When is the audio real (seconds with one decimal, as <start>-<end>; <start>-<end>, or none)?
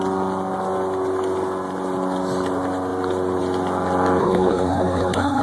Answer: 0.0-4.2